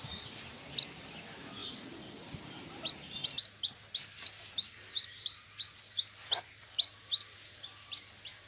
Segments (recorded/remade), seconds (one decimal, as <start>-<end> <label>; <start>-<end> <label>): 0.0-8.5 recorded